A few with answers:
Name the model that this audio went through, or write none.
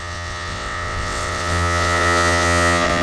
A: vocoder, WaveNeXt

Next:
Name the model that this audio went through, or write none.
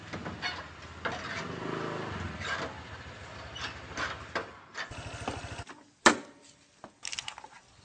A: none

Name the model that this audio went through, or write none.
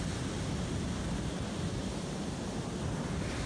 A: none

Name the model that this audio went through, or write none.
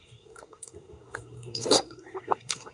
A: codec, SNAC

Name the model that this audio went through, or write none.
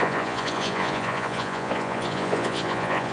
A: vocoder, Vocos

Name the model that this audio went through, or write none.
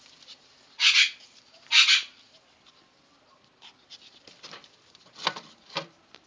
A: vocoder, BigVGAN v2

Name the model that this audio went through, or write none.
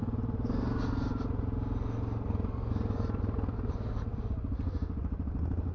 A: none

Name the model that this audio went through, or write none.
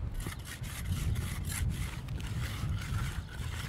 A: none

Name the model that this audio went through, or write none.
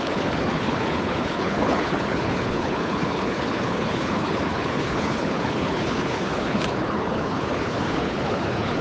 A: codec, HILCodec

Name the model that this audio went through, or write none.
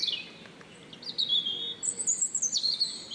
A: none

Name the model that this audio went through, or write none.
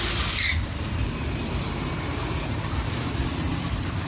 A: vocoder, BigVGAN v2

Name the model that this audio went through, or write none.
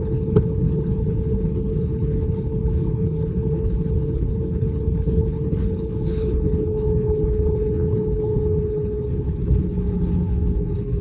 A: codec, HILCodec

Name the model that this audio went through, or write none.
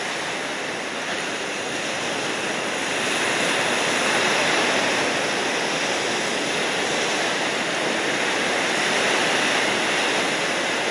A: none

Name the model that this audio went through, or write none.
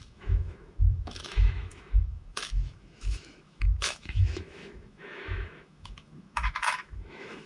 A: autoencoder, DAC-VAE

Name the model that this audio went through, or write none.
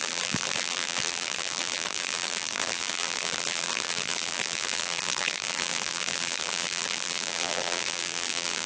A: vocoder, BigVGAN v2